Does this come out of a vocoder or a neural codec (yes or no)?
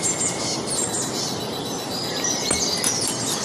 no